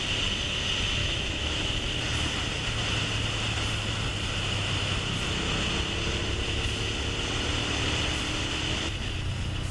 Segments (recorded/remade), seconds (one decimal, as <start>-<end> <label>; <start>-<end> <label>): 0.0-1.0 recorded; 1.0-1.7 remade; 1.7-9.7 recorded